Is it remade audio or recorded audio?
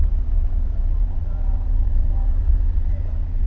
remade